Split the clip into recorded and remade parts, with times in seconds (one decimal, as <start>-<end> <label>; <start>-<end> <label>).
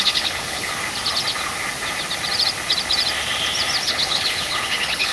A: 0.0-0.7 remade; 0.7-3.8 recorded; 3.8-5.1 remade